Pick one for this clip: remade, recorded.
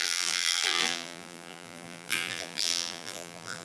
remade